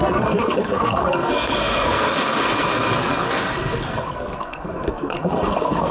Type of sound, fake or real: fake